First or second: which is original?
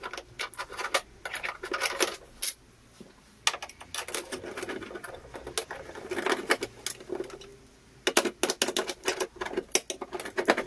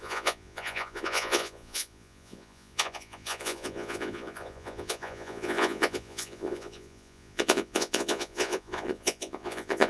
first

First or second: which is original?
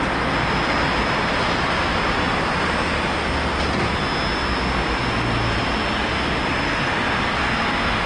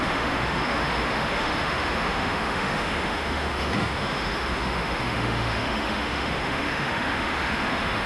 first